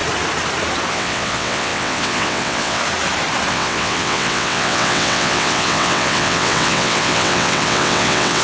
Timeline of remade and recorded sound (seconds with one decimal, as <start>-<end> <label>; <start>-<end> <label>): 0.0-0.9 recorded; 0.9-2.8 remade; 2.8-3.5 recorded; 3.5-8.4 remade